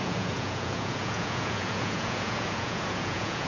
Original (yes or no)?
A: no